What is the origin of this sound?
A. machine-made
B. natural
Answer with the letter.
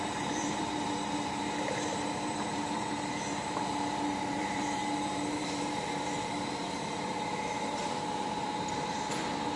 A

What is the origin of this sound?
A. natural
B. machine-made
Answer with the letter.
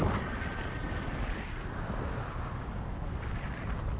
A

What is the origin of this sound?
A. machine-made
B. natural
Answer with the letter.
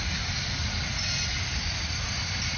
B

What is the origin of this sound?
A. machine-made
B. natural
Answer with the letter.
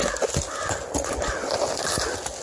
B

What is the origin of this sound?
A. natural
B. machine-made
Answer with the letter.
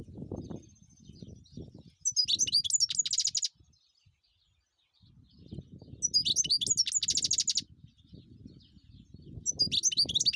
A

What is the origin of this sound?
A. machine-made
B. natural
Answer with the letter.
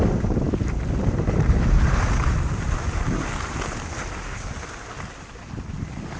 B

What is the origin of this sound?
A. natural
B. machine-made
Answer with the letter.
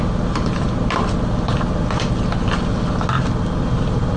A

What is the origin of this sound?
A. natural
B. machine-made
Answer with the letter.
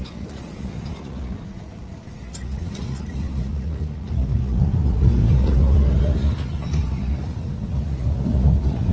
B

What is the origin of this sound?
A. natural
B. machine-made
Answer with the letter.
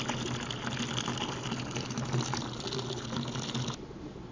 A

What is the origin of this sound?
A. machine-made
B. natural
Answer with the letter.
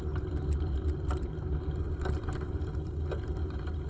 B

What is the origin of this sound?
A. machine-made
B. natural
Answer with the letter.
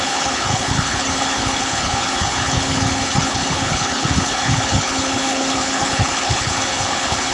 A